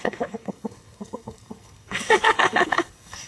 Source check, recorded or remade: remade